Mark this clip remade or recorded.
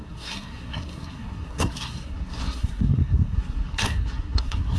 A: remade